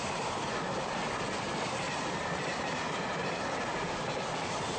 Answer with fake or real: real